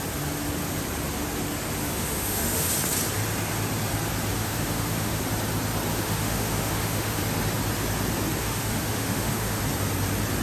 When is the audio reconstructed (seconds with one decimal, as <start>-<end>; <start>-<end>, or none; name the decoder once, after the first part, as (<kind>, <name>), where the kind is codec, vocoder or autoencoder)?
1.8-2.7 (autoencoder, DAC-VAE); 4.3-5.2; 5.9-7.2; 8.4-9.6